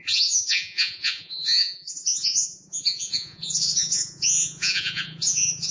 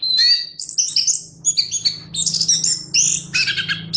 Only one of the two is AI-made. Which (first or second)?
first